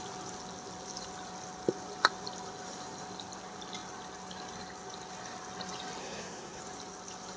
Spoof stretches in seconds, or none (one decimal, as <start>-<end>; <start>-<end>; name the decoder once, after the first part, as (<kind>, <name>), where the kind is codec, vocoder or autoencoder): 6.0-6.6 (codec, SNAC)

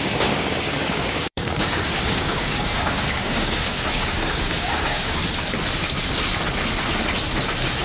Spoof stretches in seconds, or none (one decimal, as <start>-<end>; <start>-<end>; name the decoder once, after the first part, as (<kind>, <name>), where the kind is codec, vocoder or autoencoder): 0.0-5.2 (codec, DAC)

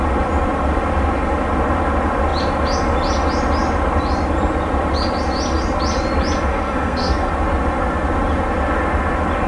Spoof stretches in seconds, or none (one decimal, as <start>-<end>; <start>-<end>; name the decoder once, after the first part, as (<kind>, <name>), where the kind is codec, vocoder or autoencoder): 6.5-7.3 (codec, SNAC)

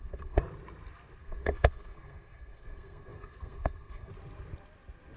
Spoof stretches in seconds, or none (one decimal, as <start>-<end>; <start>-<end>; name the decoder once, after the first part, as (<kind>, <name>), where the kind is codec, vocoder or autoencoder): 0.0-0.4 (codec, SNAC); 1.2-4.1

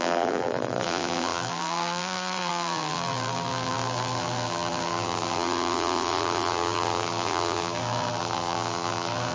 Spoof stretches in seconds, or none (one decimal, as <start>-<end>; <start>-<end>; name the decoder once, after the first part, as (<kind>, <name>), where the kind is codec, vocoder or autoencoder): 0.0-9.3 (vocoder, BigVGAN v2)

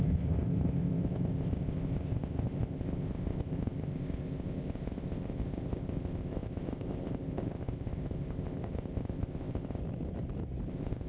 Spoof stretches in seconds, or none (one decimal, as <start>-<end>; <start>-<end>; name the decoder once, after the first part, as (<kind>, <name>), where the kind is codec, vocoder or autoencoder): 0.0-9.8 (codec, ZipCodec); 10.7-11.1

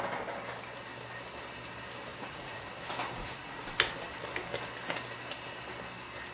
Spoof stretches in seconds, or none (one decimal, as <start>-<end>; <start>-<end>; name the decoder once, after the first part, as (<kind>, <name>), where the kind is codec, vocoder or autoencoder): 2.1-2.7 (vocoder, Vocos); 3.1-3.6

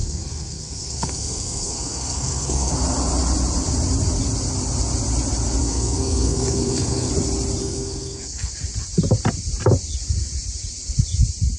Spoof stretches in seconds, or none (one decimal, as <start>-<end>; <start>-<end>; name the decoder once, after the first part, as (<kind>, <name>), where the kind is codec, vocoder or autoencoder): 0.0-2.7 (codec, SNAC); 5.6-7.1; 7.6-8.5